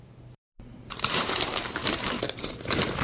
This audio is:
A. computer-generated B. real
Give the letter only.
A